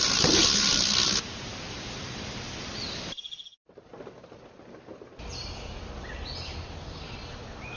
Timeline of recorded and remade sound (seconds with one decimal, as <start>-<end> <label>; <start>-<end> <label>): 0.0-7.8 recorded

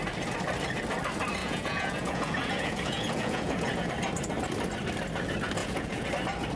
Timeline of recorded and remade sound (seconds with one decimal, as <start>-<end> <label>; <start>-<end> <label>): 0.0-1.4 recorded; 1.4-3.9 remade; 3.9-5.6 recorded; 5.6-6.1 remade; 6.1-6.6 recorded

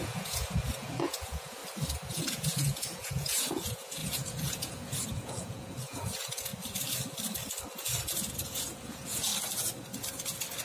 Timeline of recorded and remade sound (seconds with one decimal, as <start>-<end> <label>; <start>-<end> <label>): 0.0-1.6 remade; 1.6-2.1 recorded; 2.1-6.5 remade; 6.5-8.4 recorded; 8.4-9.3 remade; 9.3-10.6 recorded